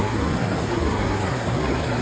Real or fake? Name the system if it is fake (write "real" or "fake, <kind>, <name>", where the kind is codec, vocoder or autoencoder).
fake, codec, SNAC